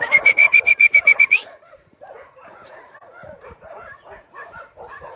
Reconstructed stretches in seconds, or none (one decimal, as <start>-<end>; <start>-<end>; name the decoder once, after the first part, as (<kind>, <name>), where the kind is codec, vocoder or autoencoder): 0.0-5.2 (vocoder, Vocos)